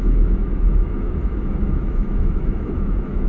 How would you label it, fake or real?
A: fake